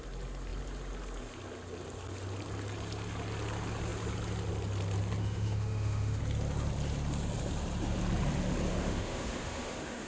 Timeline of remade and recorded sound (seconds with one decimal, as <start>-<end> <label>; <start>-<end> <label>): 0.0-5.2 recorded; 5.2-6.2 remade; 6.2-8.7 recorded; 8.7-10.1 remade